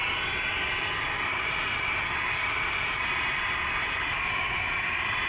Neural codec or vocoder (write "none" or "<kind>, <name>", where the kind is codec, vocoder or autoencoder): none